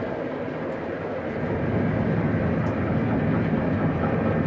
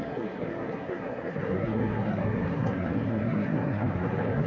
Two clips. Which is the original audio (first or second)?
first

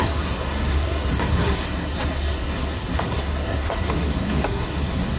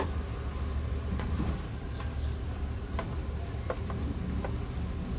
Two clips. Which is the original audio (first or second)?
second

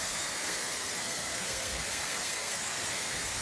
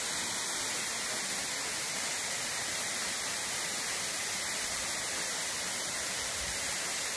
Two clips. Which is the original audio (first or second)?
second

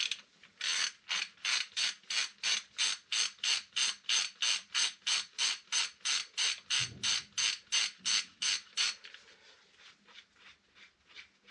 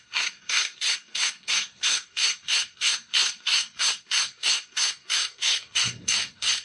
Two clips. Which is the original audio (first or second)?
first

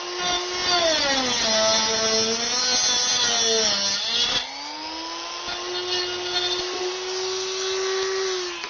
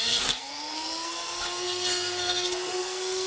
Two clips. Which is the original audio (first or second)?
first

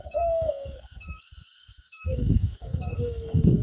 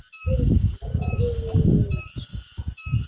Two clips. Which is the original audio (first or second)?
second